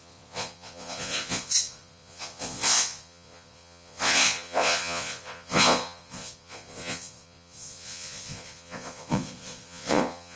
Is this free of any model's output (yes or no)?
no